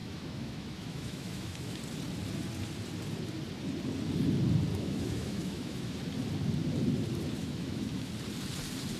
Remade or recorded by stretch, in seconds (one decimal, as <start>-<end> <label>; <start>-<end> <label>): 0.0-1.8 remade; 1.8-4.7 recorded; 4.7-5.9 remade; 5.9-7.4 recorded; 7.4-8.1 remade; 8.1-9.0 recorded